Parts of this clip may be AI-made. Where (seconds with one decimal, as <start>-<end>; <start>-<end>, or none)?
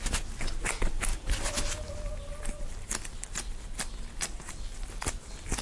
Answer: none